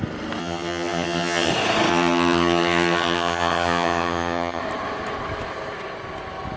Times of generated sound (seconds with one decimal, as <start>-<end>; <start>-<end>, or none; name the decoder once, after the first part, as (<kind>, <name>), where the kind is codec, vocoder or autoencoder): 0.4-1.5 (vocoder, HiFi-GAN); 1.9-4.6